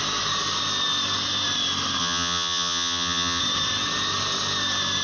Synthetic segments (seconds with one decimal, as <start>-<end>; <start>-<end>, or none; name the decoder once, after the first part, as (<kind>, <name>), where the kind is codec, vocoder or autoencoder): 2.0-3.4 (vocoder, HiFi-GAN)